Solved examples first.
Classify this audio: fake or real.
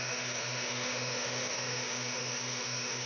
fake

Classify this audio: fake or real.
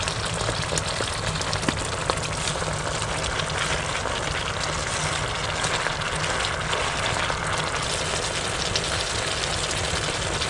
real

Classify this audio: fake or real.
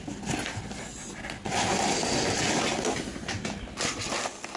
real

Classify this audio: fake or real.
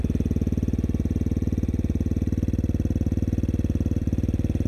real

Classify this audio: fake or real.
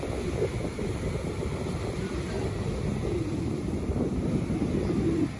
real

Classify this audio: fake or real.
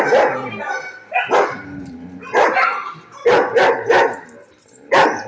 real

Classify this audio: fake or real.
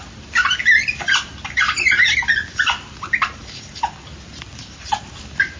real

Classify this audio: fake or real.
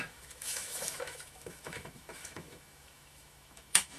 fake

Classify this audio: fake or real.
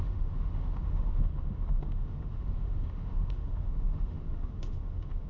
fake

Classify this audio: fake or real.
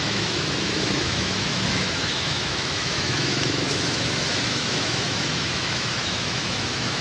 fake